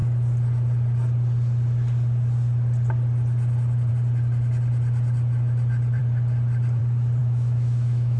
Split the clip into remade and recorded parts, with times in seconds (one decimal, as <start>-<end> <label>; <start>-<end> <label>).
0.0-7.2 recorded; 7.2-8.2 remade